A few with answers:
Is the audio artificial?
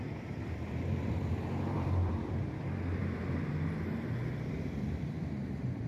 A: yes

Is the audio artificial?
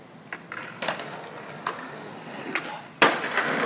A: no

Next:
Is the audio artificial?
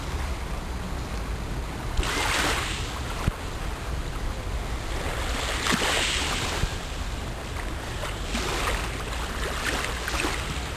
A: no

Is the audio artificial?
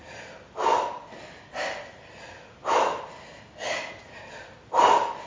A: no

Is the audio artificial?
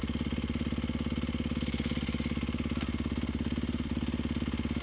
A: no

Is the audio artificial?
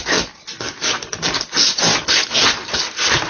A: no